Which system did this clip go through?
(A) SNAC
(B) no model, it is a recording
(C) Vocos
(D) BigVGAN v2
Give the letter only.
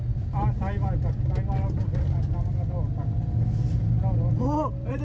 B